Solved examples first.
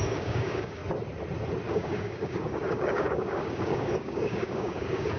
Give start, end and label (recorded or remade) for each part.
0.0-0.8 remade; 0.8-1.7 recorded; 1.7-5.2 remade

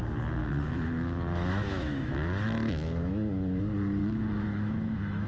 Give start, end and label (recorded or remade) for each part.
0.0-0.4 recorded; 0.4-3.6 remade; 3.6-4.0 recorded; 4.0-5.3 remade

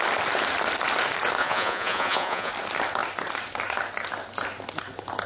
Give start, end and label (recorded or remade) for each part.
0.0-1.4 recorded; 1.4-2.5 remade; 2.5-5.3 recorded

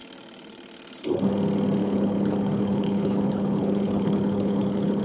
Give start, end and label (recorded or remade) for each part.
0.0-1.8 recorded; 1.8-5.0 remade

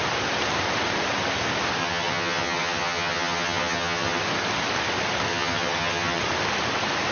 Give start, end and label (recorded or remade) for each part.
0.0-1.8 recorded; 1.8-4.2 remade; 4.2-5.3 recorded; 5.3-6.2 remade; 6.2-7.1 recorded